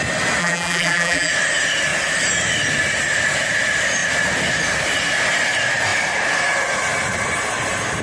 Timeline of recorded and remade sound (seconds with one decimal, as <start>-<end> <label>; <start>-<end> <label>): 0.0-0.4 recorded; 0.4-1.3 remade; 1.3-8.0 recorded